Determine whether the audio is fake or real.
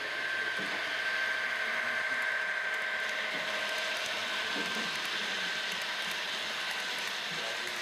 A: real